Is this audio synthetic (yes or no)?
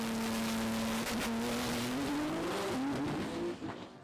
no